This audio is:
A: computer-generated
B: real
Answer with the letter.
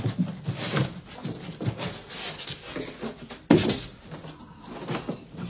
B